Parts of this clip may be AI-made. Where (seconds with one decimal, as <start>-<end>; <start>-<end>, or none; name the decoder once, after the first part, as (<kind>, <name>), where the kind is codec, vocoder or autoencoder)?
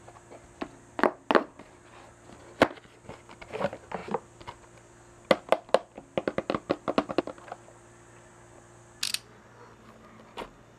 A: none